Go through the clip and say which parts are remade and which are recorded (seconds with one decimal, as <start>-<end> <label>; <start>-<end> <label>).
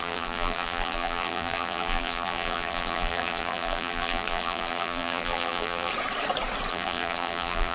0.0-5.9 remade; 5.9-6.7 recorded; 6.7-7.7 remade